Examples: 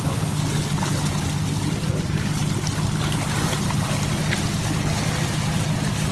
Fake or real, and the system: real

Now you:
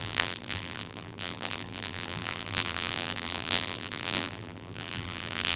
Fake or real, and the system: fake, vocoder, BigVGAN v2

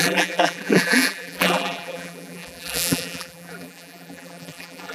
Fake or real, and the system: fake, vocoder, BigVGAN v2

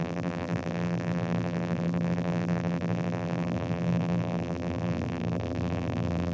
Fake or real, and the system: fake, vocoder, BigVGAN v2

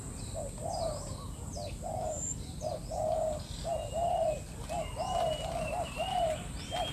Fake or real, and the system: real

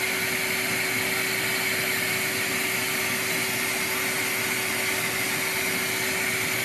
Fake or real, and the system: real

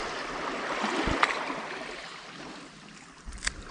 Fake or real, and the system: fake, vocoder, BigVGAN v2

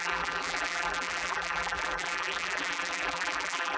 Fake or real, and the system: fake, vocoder, BigVGAN v2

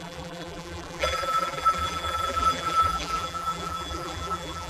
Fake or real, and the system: fake, vocoder, BigVGAN v2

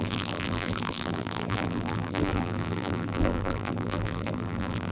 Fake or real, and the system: fake, vocoder, BigVGAN v2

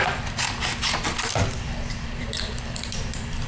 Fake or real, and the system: fake, vocoder, BigVGAN v2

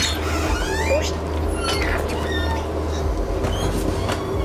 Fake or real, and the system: real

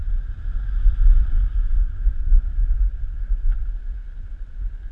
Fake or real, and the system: real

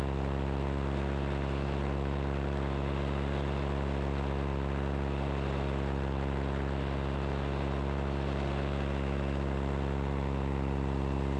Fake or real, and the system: real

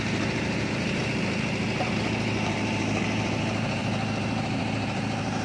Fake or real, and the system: fake, vocoder, BigVGAN v2